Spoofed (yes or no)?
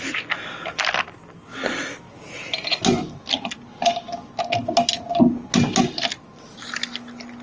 no